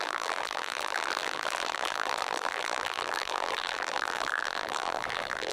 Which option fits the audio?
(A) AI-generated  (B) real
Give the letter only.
A